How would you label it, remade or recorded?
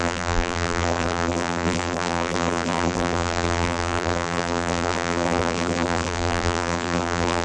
remade